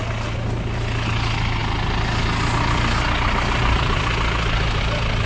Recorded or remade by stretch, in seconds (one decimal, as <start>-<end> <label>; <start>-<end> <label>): 0.0-5.3 recorded